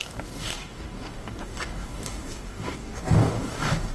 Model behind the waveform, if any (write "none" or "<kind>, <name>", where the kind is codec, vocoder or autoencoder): codec, DAC